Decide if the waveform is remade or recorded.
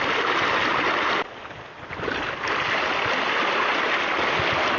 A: recorded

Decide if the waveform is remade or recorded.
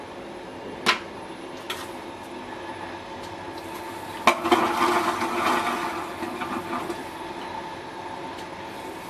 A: recorded